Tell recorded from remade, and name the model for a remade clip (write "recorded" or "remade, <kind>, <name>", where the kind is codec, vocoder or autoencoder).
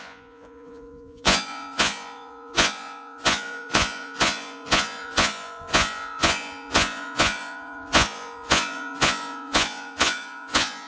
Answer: remade, vocoder, Vocos